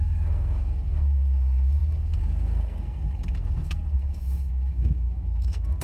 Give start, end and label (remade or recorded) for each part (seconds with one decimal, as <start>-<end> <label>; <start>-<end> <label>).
0.0-5.8 remade